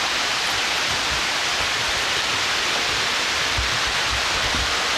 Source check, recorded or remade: remade